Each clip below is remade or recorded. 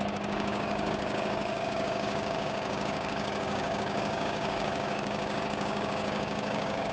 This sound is remade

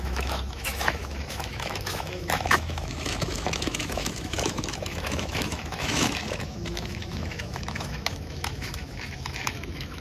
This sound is remade